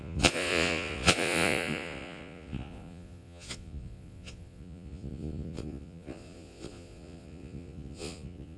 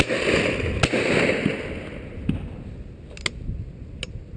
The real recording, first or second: second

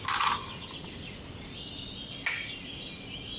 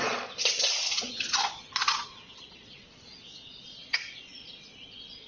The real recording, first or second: first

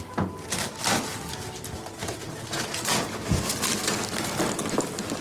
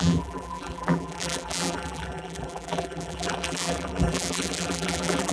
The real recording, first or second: first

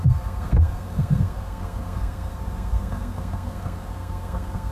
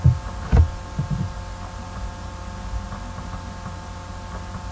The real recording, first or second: second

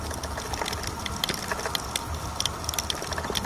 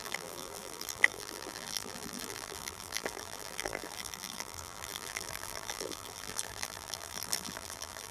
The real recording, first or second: first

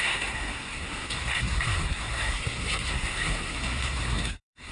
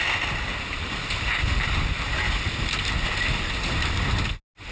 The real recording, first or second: second